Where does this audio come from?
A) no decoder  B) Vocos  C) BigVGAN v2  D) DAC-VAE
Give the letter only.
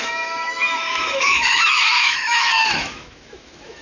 D